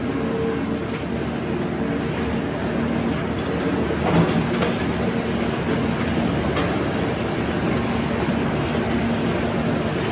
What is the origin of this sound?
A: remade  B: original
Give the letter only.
B